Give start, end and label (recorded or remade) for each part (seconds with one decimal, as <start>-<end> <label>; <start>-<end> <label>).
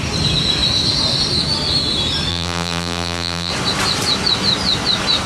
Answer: 0.0-2.3 recorded; 2.3-3.5 remade; 3.5-5.3 recorded